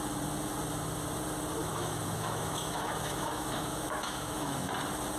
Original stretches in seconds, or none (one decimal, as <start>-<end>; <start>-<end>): 0.0-1.6; 4.7-5.2

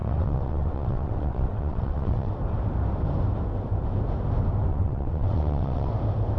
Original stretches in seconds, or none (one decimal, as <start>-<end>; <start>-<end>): 2.3-4.7; 5.9-6.4

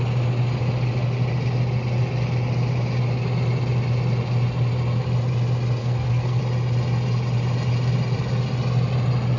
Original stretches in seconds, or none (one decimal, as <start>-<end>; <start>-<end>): 0.0-5.8; 6.4-9.4